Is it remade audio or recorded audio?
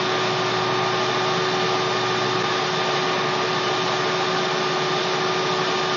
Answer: recorded